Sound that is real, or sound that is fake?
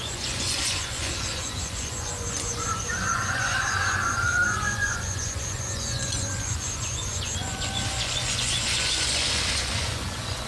fake